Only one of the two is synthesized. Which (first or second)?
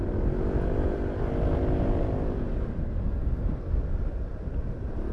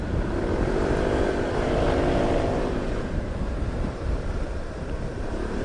second